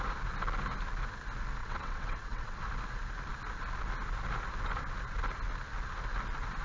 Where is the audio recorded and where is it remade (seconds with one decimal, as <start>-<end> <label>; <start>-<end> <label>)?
0.0-1.6 recorded; 1.6-2.6 remade; 2.6-6.6 recorded